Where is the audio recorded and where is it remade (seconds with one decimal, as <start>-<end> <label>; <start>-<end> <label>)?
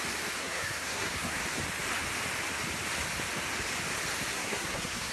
0.0-0.4 recorded; 0.4-1.4 remade; 1.4-4.3 recorded; 4.3-5.1 remade